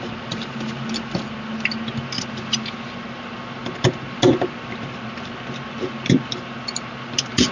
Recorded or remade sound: recorded